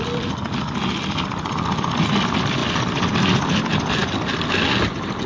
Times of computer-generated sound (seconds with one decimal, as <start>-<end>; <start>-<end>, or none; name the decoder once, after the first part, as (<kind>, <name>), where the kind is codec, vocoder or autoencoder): none